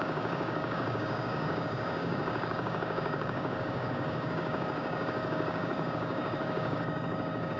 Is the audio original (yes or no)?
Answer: no